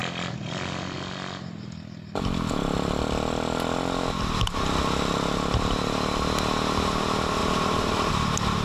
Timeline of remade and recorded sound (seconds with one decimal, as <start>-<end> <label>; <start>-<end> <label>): 0.0-7.4 recorded; 7.4-8.1 remade; 8.1-8.6 recorded